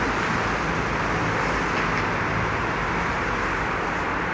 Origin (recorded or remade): recorded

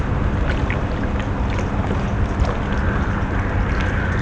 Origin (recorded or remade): recorded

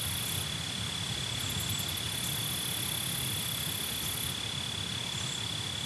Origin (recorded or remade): recorded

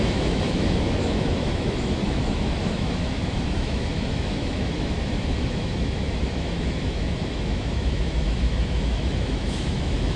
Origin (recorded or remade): remade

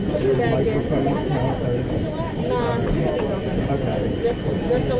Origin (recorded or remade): recorded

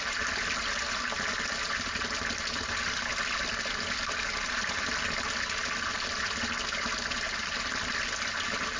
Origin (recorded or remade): recorded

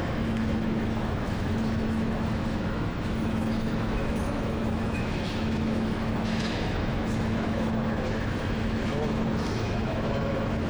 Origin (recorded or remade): remade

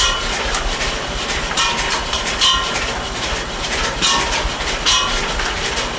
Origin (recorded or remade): recorded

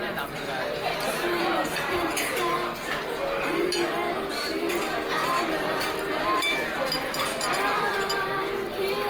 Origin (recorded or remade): remade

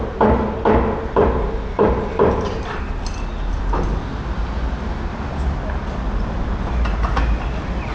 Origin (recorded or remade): recorded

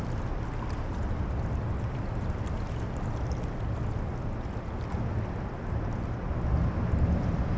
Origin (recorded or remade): recorded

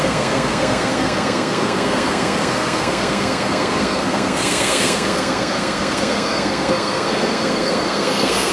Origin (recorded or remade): remade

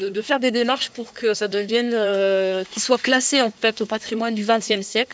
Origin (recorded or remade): remade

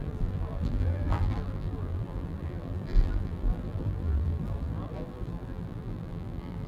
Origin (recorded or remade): remade